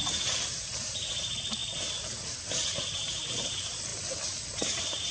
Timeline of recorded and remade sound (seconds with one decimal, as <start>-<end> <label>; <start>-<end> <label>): 0.0-5.1 recorded